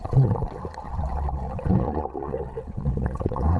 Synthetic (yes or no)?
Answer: yes